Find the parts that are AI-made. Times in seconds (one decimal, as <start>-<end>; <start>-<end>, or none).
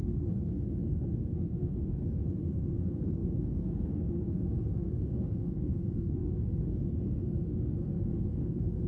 0.0-8.9